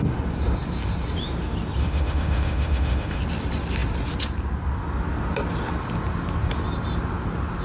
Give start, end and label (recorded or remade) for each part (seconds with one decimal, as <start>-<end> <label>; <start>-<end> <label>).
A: 0.0-1.8 recorded; 1.8-3.2 remade; 3.2-7.6 recorded